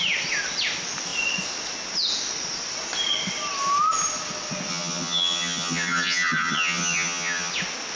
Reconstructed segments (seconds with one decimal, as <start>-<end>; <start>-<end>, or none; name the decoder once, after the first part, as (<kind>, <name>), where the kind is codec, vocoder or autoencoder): 4.7-7.5 (vocoder, HiFi-GAN)